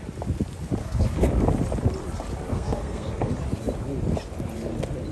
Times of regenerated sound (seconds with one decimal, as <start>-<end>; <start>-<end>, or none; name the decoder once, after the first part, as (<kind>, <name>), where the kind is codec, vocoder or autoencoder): 0.8-1.3 (codec, SNAC); 2.5-3.3